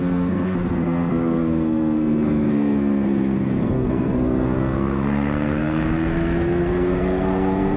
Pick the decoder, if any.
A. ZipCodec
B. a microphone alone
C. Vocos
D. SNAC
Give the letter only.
D